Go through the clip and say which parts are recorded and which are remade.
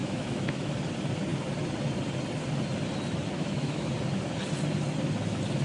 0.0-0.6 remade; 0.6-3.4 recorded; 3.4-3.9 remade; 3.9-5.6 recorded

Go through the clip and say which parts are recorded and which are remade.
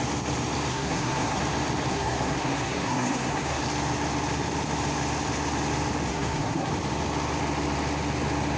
0.0-0.7 recorded; 0.7-1.4 remade; 1.4-1.9 recorded; 1.9-3.6 remade; 3.6-6.1 recorded; 6.1-6.7 remade; 6.7-8.6 recorded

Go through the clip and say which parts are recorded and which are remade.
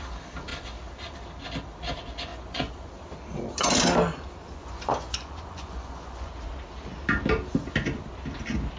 0.0-2.3 recorded; 2.3-2.9 remade; 2.9-4.4 recorded; 4.4-6.3 remade; 6.3-8.8 recorded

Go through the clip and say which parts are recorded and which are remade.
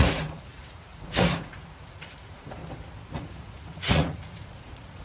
0.0-2.6 remade; 2.6-3.2 recorded; 3.2-5.0 remade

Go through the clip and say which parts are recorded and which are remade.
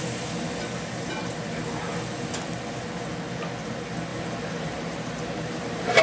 0.0-4.1 recorded; 4.1-6.0 remade